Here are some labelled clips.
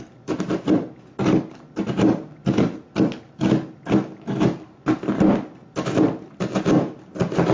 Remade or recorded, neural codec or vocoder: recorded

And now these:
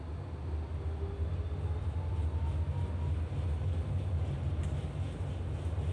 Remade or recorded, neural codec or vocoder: recorded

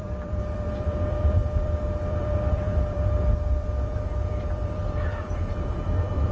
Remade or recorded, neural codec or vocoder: remade, vocoder, BigVGAN v2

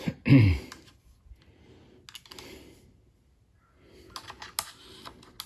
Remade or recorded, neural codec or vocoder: recorded